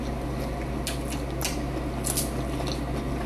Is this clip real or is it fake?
real